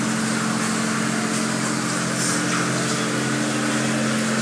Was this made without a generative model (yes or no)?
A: yes